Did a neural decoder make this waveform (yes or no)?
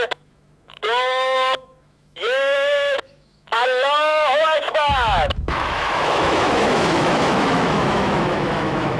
yes